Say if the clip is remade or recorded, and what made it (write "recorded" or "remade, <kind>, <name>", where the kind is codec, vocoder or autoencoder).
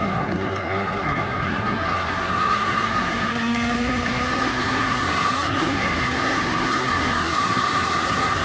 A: remade, codec, SNAC